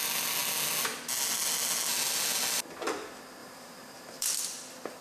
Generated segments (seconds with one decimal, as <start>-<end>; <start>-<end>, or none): 3.4-4.3

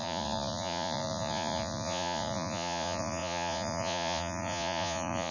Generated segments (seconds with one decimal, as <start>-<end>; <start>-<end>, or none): 0.0-5.3

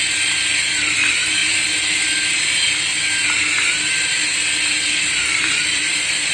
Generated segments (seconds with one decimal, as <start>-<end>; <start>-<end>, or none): 0.0-1.4; 5.0-6.3

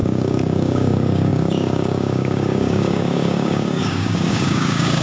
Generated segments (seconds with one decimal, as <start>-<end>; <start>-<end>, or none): 0.0-5.0

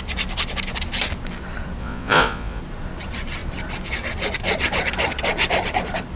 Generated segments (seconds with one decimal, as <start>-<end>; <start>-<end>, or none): 1.8-2.6

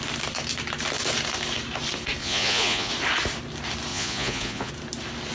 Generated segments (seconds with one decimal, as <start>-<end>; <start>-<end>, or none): 2.2-2.9; 3.9-4.7

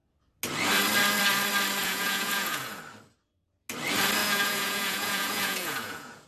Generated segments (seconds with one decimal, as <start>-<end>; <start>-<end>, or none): 1.8-2.8; 4.2-6.3

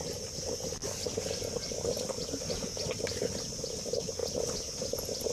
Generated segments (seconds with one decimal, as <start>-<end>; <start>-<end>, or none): 0.8-3.7